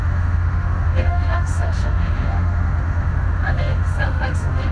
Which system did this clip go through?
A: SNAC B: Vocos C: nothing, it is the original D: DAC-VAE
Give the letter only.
D